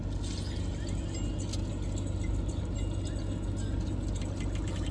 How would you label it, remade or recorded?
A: recorded